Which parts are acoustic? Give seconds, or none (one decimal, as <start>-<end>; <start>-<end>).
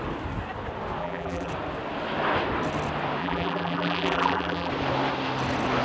0.0-1.0; 1.5-3.2; 4.7-5.8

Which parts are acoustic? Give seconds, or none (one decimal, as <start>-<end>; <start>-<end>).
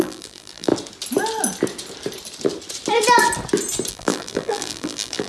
0.7-3.9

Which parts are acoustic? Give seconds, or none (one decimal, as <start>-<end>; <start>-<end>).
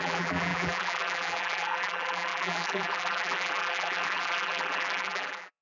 none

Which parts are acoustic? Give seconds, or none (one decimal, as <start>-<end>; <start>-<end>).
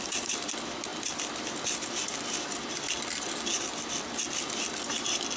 0.0-5.4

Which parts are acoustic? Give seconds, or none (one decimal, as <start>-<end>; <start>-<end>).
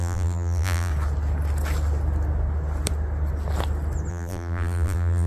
0.9-4.1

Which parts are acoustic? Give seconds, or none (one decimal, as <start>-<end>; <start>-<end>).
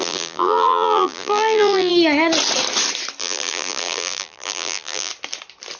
1.9-3.2; 5.1-5.8